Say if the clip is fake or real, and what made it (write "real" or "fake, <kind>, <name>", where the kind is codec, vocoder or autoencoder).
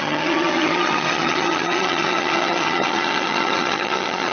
fake, vocoder, HiFi-GAN